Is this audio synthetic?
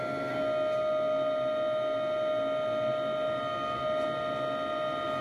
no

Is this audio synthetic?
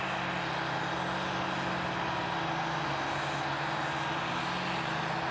no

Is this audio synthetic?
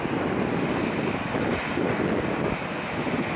no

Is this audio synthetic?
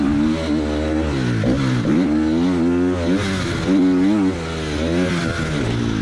no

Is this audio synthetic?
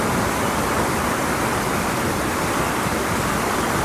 no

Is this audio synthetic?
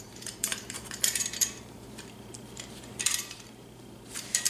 yes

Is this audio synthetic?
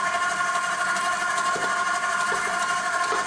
no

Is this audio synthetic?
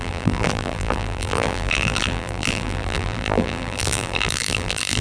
yes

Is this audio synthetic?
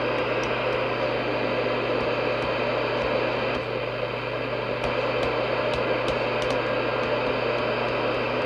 no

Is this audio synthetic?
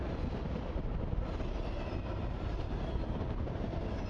yes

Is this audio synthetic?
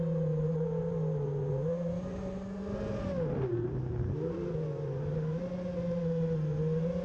no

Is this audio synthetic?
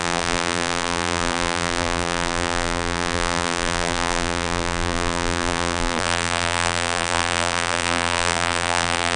yes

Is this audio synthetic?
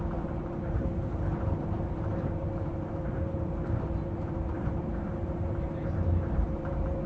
yes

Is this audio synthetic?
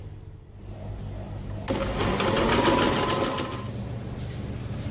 yes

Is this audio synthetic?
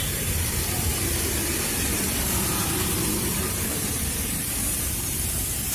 yes